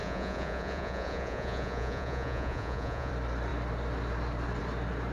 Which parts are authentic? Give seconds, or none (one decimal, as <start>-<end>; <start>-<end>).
3.1-5.1